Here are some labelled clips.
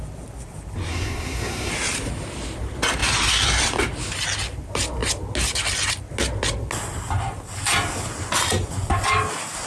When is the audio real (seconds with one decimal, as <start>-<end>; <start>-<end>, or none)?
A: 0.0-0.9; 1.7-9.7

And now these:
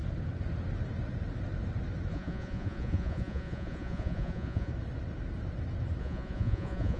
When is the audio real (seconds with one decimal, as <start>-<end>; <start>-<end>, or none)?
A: 0.0-2.1; 4.7-6.0

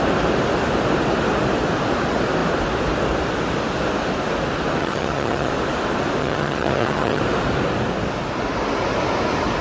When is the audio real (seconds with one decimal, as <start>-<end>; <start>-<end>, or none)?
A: 0.0-4.8; 5.5-6.2; 7.2-9.6

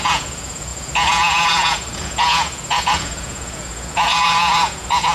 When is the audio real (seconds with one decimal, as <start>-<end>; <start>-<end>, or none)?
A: none